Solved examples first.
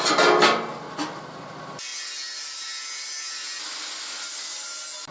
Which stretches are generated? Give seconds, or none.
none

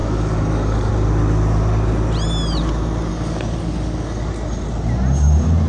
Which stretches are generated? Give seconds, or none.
0.0-0.9; 3.1-4.3

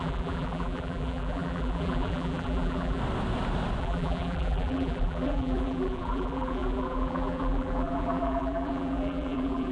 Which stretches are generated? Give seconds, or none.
0.0-3.0; 3.8-9.7